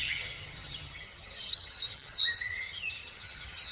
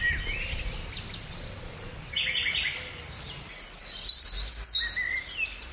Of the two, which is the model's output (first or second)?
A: first